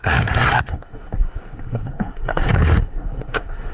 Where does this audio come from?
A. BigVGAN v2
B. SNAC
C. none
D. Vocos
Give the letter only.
B